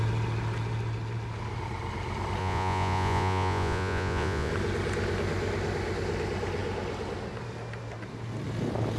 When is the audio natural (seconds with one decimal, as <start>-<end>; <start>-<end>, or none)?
0.0-2.4; 4.5-9.0